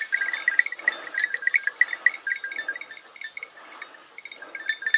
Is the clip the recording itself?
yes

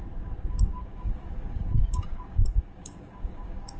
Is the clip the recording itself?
no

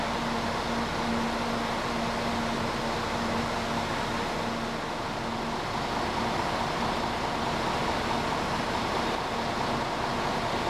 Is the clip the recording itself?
yes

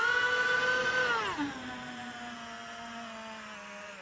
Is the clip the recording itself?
yes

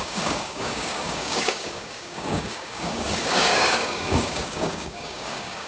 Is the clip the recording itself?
no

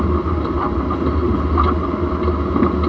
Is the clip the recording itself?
yes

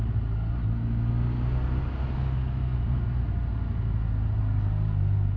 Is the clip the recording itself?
yes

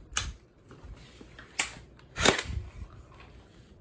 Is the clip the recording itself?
yes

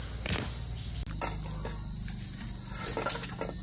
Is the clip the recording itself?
yes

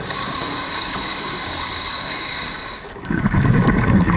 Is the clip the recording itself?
no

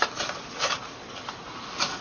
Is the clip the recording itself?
yes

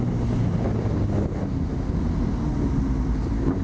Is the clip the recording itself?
yes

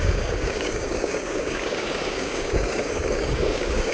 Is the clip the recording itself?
no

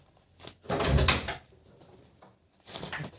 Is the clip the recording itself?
yes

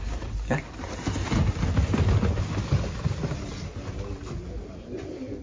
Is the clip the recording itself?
yes